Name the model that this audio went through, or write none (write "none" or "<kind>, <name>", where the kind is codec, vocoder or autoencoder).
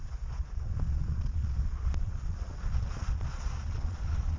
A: vocoder, Vocos